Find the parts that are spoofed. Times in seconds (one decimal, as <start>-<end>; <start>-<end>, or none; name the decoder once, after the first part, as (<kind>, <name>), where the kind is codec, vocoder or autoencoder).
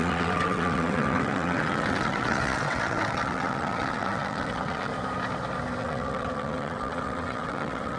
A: 0.0-4.9 (vocoder, WaveNeXt); 5.8-8.0